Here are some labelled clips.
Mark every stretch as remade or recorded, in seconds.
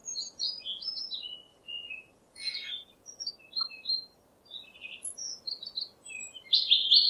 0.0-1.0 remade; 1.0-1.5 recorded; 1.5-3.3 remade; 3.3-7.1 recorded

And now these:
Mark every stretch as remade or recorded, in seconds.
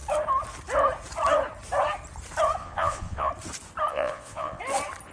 0.0-2.6 recorded; 2.6-3.3 remade; 3.3-3.9 recorded; 3.9-4.6 remade; 4.6-5.1 recorded